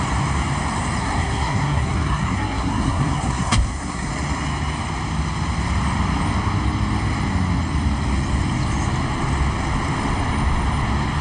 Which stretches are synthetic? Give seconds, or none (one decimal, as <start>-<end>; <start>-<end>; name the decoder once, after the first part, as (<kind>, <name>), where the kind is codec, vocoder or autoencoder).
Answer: 1.0-4.1 (codec, SNAC)